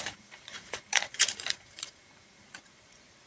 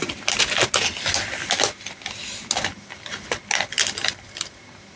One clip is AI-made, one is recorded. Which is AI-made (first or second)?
first